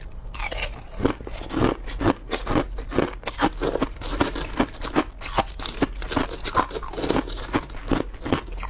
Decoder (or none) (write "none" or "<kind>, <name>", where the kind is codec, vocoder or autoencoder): none